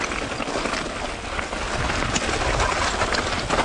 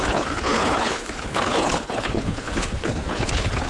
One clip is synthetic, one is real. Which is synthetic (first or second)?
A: second